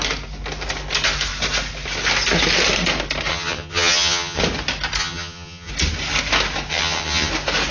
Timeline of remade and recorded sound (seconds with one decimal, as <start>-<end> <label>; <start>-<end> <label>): 0.0-3.3 recorded; 3.3-4.4 remade; 4.4-5.0 recorded; 5.0-5.7 remade; 5.7-6.7 recorded; 6.7-7.3 remade; 7.3-7.7 recorded